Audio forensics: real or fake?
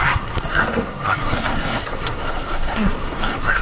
fake